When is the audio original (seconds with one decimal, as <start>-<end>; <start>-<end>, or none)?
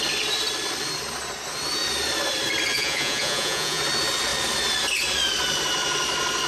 0.0-2.7; 3.8-6.5